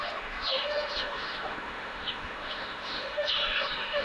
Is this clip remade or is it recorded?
remade